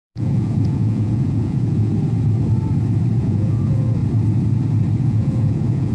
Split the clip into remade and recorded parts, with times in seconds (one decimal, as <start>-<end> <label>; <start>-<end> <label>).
0.0-1.9 remade; 1.9-3.2 recorded; 3.2-4.0 remade; 4.0-5.0 recorded; 5.0-5.9 remade